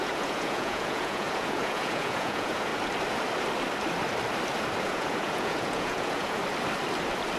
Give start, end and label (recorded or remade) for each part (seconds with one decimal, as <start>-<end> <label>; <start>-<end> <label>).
0.0-2.7 remade; 2.7-4.8 recorded; 4.8-6.4 remade; 6.4-7.4 recorded